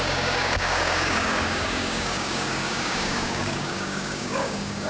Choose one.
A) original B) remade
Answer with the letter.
B